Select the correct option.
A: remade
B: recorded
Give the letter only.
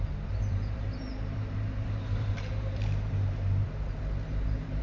A